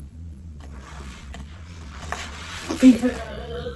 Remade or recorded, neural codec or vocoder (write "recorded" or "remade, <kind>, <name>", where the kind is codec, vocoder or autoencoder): remade, vocoder, Vocos